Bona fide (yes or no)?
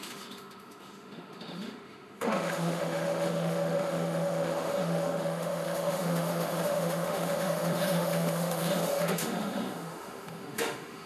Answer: no